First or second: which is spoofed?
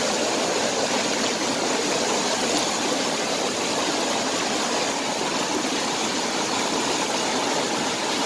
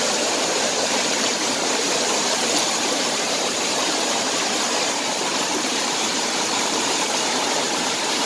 second